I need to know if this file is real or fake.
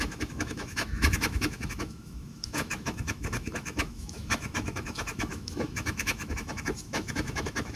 fake